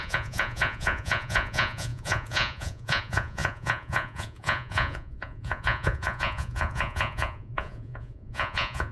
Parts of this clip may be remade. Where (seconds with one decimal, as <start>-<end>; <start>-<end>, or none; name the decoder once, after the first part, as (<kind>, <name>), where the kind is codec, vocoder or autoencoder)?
0.0-8.9 (vocoder, Vocos)